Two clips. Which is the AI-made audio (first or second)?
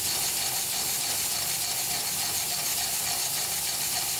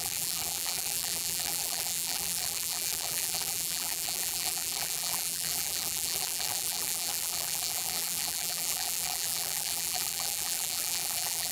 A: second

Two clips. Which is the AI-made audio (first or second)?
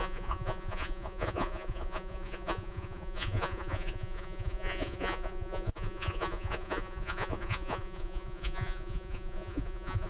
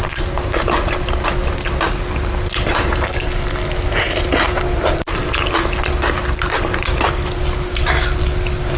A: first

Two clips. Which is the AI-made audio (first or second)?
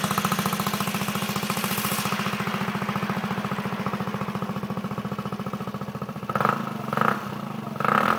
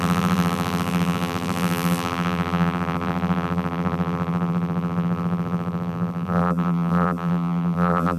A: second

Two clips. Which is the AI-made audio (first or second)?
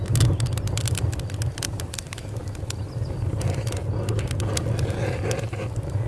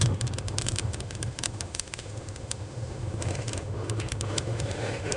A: second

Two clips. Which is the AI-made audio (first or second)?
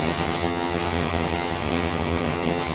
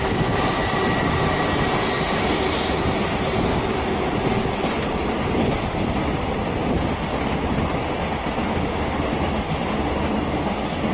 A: first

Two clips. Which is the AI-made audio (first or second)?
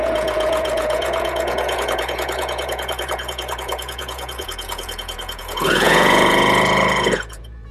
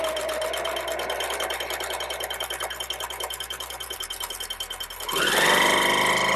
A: first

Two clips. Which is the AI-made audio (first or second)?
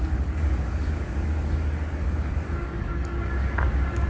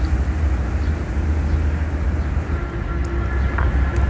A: first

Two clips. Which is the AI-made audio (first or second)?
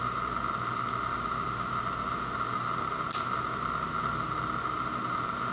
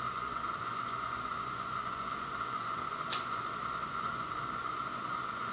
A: second